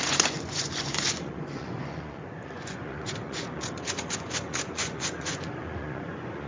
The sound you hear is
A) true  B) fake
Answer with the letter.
B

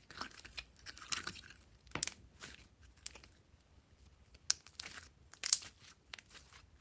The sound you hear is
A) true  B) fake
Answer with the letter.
A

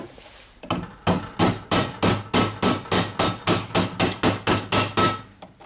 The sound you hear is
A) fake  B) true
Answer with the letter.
B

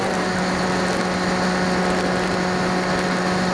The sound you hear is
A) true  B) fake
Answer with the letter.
A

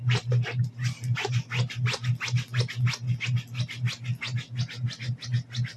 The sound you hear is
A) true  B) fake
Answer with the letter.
A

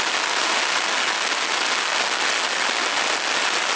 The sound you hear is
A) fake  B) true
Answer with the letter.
B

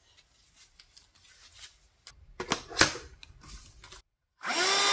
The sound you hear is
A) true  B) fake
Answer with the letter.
A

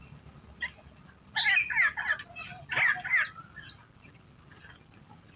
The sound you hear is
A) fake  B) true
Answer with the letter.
B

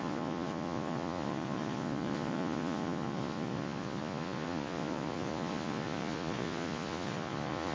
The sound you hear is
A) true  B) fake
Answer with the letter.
B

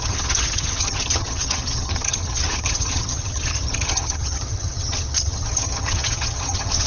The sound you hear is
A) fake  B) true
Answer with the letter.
A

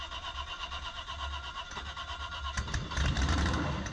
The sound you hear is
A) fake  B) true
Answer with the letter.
B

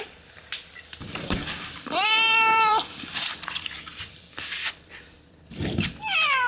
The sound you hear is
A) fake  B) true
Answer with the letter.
A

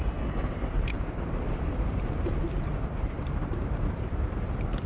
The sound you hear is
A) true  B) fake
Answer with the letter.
B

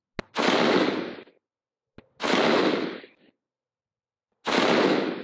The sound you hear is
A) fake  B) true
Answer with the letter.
B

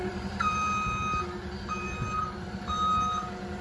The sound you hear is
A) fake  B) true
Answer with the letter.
A